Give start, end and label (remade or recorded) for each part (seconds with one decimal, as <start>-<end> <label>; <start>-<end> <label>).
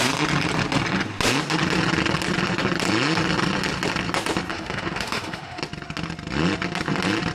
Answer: 0.0-4.5 recorded; 4.5-5.6 remade; 5.6-7.3 recorded